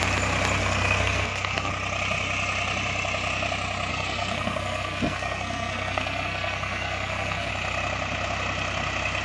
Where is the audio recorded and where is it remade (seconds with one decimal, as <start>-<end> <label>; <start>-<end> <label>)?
0.0-0.6 recorded; 0.6-1.7 remade; 1.7-3.9 recorded; 3.9-7.5 remade; 7.5-9.2 recorded